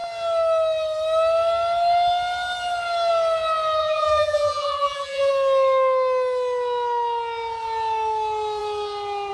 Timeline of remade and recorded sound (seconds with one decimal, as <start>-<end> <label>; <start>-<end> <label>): 0.0-3.8 recorded; 3.8-5.3 remade; 5.3-9.3 recorded